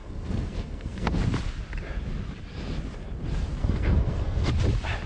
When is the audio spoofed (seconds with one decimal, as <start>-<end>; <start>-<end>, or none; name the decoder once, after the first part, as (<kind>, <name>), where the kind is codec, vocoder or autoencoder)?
0.0-1.2 (codec, SNAC); 3.6-4.5